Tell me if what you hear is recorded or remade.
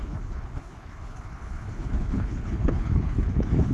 remade